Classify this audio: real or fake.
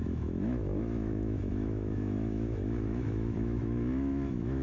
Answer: fake